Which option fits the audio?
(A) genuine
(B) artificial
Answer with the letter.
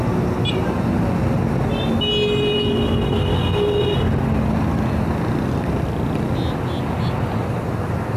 A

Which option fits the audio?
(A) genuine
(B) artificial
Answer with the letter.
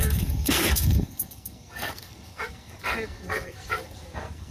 B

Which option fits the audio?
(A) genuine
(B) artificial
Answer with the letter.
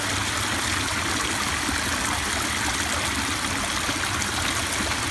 A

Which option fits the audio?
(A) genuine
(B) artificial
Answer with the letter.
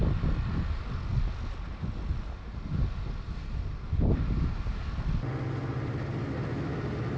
A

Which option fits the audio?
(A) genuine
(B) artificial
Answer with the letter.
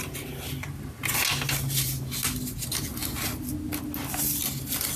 A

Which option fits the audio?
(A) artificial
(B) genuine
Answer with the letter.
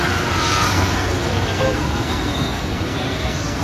A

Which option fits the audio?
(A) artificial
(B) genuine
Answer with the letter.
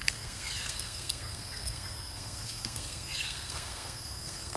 A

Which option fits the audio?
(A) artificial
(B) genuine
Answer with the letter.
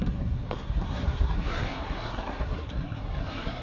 A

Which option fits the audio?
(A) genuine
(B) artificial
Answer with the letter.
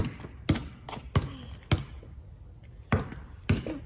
A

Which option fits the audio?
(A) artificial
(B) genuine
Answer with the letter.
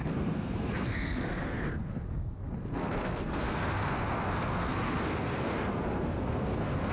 A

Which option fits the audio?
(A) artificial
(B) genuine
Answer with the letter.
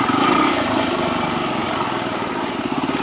B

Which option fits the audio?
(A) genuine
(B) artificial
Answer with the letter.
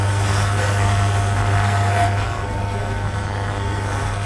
B